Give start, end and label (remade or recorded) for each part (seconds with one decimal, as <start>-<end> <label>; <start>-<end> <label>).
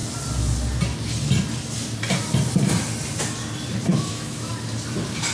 0.0-3.9 recorded; 3.9-4.5 remade; 4.5-5.3 recorded